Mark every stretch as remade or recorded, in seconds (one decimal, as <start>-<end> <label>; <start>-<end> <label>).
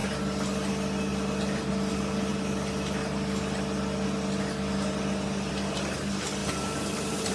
0.0-7.3 recorded